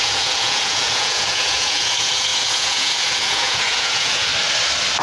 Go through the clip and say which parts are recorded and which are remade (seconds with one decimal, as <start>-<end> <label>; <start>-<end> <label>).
0.0-4.3 remade; 4.3-5.0 recorded